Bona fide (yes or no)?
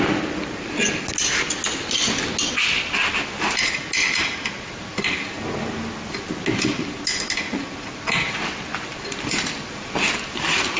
yes